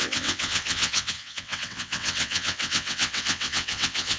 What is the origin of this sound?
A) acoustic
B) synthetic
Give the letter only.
B